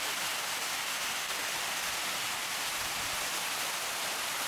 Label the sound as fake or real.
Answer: real